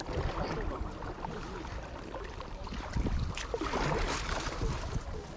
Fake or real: real